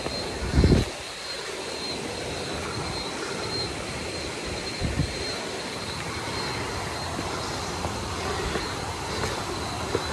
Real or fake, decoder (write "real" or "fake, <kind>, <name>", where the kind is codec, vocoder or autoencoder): real